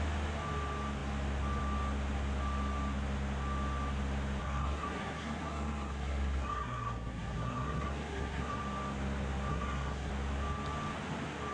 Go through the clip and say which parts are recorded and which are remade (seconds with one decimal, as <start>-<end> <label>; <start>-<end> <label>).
0.0-4.4 recorded; 4.4-8.6 remade; 8.6-9.5 recorded; 9.5-10.1 remade; 10.1-11.5 recorded